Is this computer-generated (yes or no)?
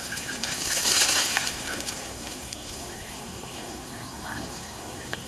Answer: yes